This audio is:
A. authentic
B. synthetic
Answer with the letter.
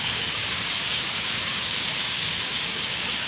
B